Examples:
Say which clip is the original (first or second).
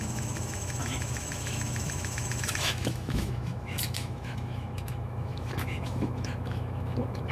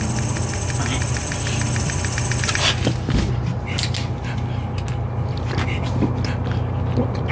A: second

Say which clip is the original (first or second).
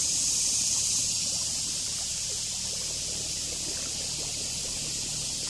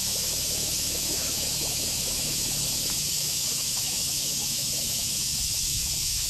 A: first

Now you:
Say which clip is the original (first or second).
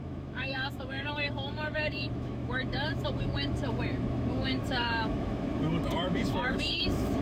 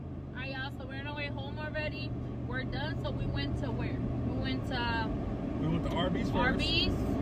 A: second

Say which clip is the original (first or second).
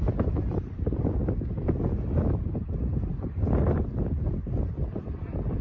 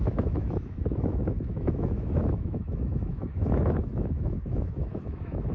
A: first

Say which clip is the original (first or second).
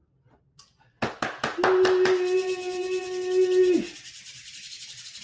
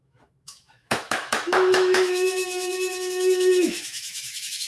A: first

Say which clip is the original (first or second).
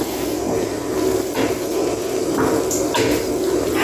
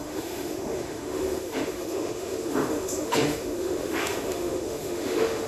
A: first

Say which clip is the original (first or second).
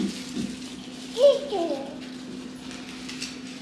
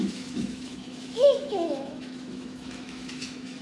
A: first